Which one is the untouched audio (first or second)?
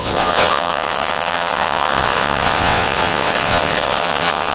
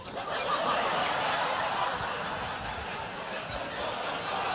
second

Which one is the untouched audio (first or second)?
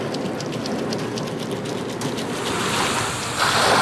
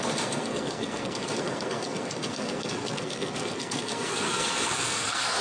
first